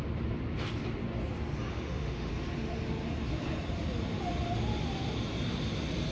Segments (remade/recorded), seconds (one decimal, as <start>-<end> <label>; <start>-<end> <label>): 0.0-1.7 recorded; 1.7-2.3 remade; 2.3-6.1 recorded